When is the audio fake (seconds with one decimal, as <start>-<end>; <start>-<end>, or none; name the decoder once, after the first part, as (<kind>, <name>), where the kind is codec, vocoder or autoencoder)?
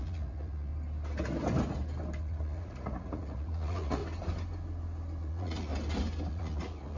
0.0-0.7 (vocoder, Vocos); 2.2-4.0; 5.2-5.7; 6.3-7.0